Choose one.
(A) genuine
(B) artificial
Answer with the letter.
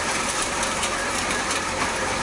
B